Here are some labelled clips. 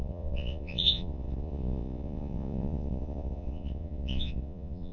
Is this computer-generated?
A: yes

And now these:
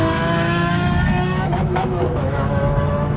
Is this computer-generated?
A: yes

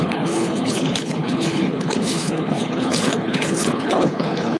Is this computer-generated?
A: yes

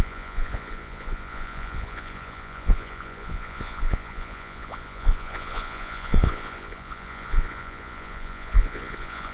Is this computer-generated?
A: yes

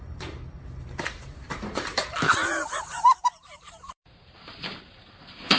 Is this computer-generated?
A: yes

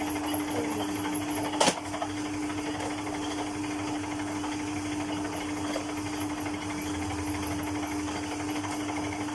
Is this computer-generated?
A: no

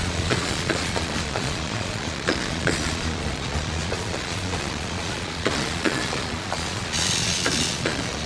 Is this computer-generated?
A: yes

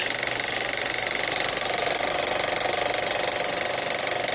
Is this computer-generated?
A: no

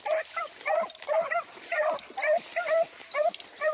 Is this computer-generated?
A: no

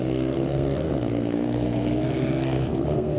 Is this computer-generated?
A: yes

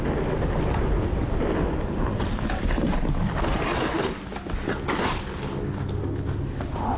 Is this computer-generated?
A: no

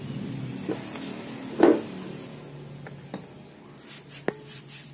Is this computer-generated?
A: no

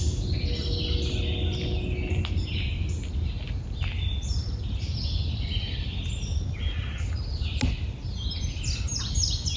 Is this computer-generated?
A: no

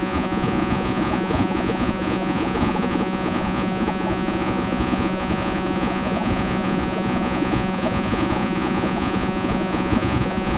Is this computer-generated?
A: yes